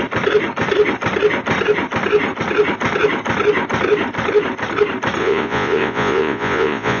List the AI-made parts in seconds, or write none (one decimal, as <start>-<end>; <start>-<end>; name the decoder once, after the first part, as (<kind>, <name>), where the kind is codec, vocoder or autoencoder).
5.2-7.0 (vocoder, Vocos)